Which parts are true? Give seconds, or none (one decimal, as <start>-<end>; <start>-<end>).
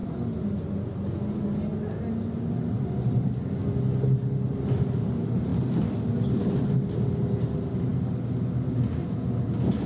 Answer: 0.0-9.9